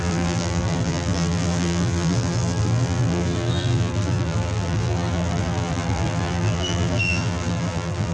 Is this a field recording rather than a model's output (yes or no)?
no